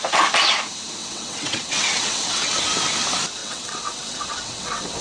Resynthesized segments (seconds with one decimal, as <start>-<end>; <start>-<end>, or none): 1.0-2.6; 3.4-5.0